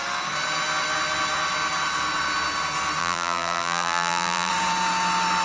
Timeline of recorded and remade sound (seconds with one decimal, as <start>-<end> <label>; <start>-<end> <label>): 0.0-3.0 recorded; 3.0-4.5 remade; 4.5-5.4 recorded